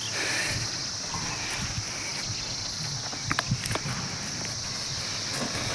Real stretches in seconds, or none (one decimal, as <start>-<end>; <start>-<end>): 0.0-5.7